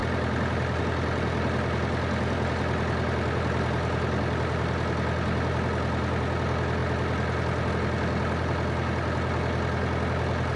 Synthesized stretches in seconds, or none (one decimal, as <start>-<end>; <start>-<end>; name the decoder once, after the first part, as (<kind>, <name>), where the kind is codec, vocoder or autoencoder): none